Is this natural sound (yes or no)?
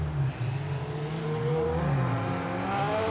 yes